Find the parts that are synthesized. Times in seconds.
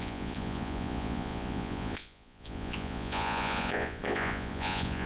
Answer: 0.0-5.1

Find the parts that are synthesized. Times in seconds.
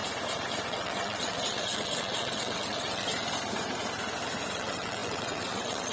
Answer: 0.7-3.1; 4.5-5.9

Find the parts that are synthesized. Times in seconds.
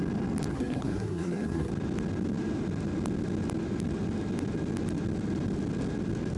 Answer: 0.5-1.7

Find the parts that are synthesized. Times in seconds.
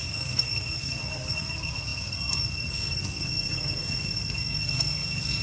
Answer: 0.0-5.4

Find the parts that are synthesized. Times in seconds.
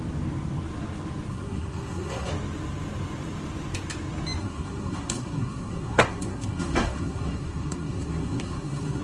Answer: 1.3-2.3; 4.4-9.0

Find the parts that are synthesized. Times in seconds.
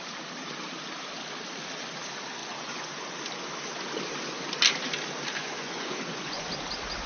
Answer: 2.4-2.9; 5.4-6.5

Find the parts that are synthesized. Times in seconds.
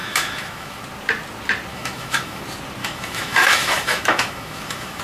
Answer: 0.0-0.8; 1.7-2.4; 2.8-5.0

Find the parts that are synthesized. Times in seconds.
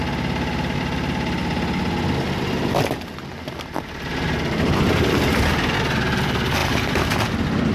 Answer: none